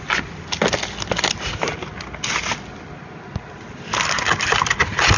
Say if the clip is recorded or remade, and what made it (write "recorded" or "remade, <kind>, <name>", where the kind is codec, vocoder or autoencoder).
recorded